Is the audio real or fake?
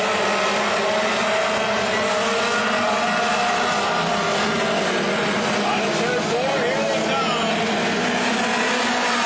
real